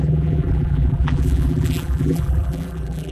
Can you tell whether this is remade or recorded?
remade